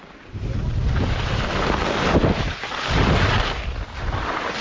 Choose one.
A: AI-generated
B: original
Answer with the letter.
B